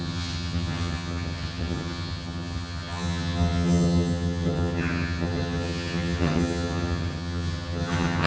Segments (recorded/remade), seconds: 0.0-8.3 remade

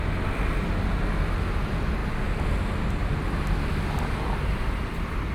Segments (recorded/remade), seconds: 0.0-5.3 recorded